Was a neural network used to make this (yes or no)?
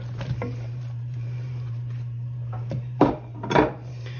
yes